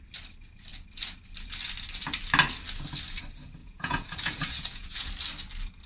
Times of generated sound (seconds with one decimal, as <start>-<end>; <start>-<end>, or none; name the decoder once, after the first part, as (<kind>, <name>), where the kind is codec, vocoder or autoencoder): 3.6-5.1 (vocoder, Vocos)